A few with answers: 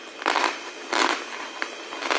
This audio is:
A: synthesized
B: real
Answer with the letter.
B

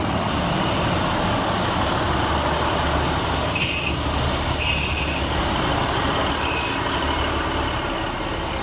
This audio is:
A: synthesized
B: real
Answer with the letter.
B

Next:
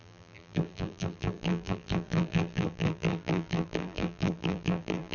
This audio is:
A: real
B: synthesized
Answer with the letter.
B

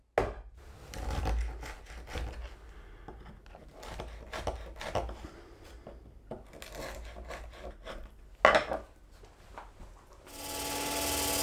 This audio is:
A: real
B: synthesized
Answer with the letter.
A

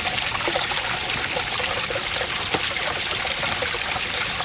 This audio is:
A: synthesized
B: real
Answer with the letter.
B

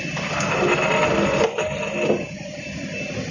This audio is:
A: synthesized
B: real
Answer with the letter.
B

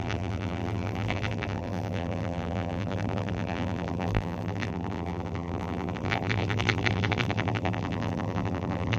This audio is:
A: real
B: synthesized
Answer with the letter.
B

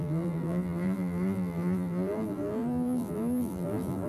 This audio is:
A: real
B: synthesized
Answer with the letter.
B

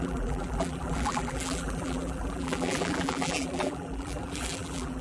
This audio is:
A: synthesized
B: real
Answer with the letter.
A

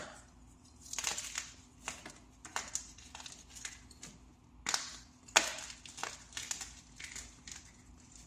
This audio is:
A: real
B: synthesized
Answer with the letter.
A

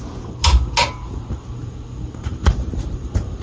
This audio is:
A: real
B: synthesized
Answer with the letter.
B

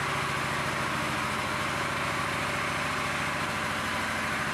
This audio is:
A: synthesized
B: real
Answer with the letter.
B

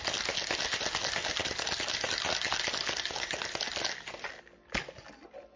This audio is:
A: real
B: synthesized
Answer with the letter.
A